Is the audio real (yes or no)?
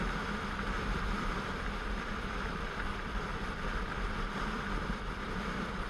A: no